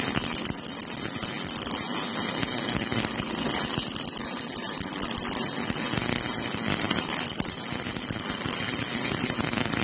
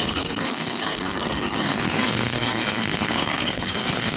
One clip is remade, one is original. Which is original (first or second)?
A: first